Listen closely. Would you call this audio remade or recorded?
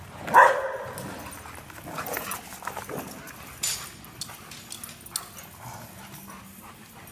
recorded